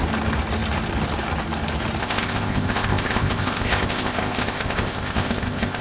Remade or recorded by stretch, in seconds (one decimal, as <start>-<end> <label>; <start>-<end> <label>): 0.0-2.0 recorded; 2.0-5.8 remade